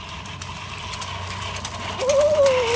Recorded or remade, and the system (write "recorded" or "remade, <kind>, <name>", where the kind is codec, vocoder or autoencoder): recorded